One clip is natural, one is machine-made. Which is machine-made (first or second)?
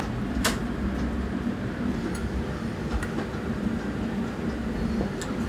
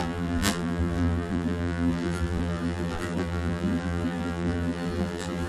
second